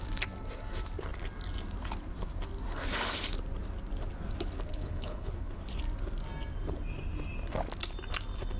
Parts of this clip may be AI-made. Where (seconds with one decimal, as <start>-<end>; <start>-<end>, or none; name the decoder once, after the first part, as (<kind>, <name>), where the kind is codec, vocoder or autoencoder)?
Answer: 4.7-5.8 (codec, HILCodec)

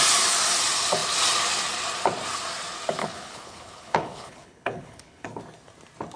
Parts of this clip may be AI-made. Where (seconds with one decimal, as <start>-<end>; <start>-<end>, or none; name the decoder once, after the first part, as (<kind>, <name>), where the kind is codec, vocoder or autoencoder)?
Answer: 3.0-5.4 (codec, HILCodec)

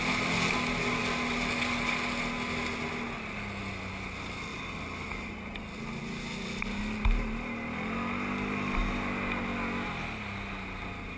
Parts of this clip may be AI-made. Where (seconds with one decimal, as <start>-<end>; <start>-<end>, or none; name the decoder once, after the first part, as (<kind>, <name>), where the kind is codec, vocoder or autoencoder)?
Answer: none

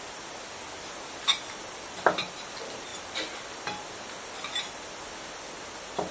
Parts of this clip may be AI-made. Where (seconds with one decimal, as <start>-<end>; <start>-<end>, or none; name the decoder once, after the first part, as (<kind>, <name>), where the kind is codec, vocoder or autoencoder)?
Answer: none

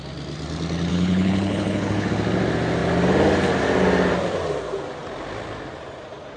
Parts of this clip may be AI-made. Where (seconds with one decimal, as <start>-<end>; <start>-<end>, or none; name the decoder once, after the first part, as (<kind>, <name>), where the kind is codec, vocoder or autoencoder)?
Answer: 0.9-2.1 (codec, HILCodec)